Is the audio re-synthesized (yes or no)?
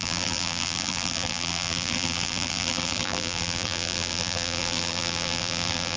yes